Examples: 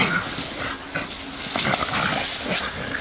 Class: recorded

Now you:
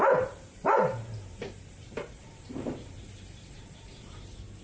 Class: remade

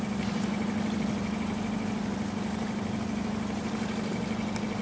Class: recorded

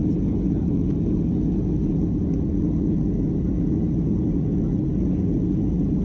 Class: recorded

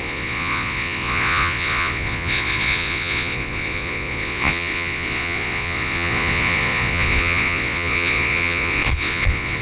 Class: remade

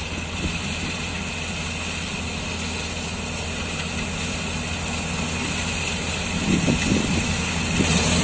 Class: recorded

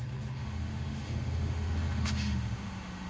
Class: remade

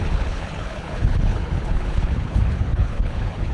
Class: remade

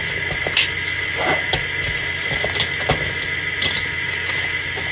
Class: recorded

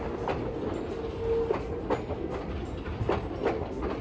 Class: recorded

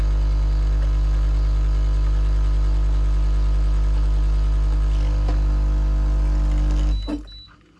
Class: recorded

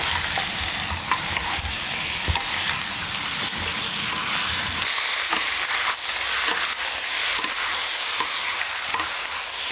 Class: recorded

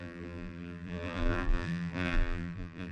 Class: remade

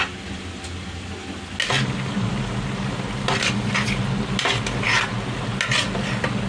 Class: recorded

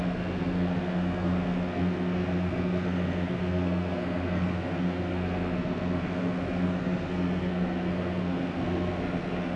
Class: remade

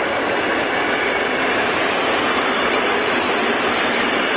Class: remade